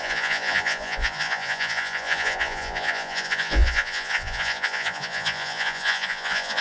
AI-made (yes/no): yes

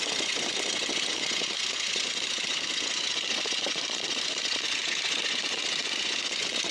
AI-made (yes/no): yes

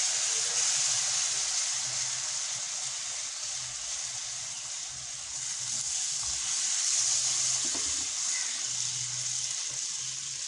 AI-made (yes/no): no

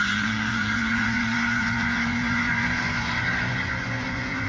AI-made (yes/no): yes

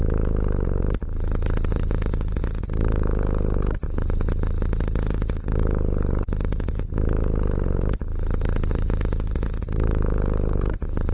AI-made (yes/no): no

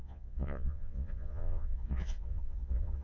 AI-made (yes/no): yes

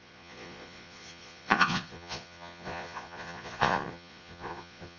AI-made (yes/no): yes